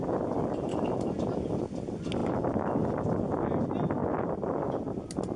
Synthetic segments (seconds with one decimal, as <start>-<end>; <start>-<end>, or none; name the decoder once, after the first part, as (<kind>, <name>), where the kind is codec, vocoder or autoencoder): none